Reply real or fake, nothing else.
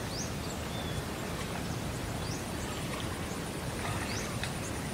real